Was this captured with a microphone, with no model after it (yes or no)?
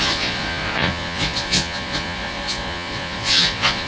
no